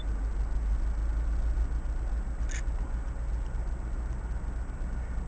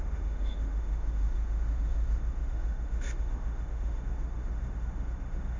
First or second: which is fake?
second